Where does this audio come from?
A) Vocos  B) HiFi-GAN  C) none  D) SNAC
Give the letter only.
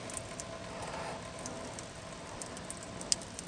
C